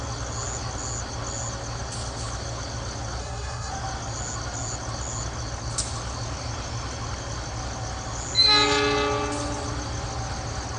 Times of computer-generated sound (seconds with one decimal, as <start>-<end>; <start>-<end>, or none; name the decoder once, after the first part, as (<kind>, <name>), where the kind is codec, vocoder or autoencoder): 3.2-3.7 (codec, SNAC)